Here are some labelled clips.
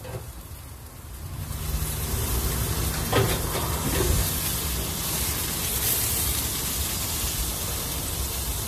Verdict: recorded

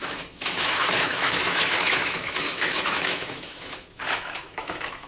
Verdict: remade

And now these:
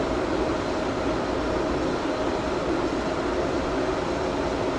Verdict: recorded